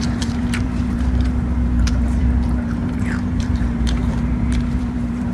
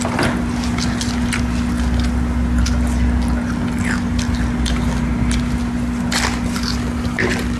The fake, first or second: first